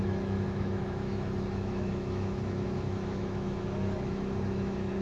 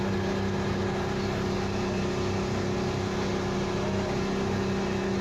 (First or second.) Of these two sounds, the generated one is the first